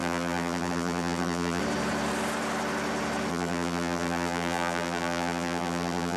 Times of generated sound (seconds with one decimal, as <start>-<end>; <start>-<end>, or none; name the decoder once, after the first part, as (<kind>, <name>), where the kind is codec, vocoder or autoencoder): 0.0-1.6 (vocoder, BigVGAN v2); 3.3-6.2